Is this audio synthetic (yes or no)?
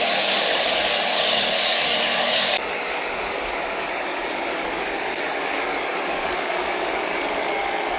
yes